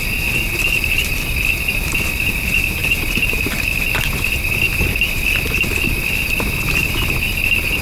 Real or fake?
real